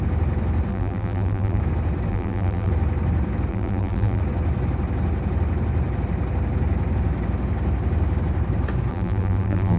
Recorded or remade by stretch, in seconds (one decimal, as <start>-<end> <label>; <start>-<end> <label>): 0.0-0.7 recorded; 0.7-1.6 remade; 1.6-2.1 recorded; 2.1-2.7 remade; 2.7-3.5 recorded; 3.5-4.2 remade; 4.2-8.9 recorded; 8.9-9.8 remade